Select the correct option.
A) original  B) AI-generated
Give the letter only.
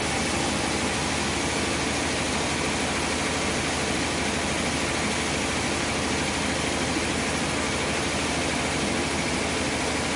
A